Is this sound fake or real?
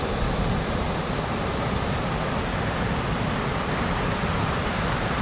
real